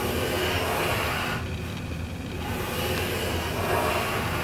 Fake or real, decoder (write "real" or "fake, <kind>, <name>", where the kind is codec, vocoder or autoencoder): real